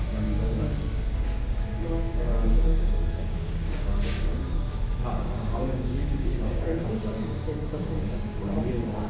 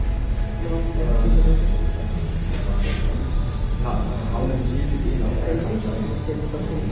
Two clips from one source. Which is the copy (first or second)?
first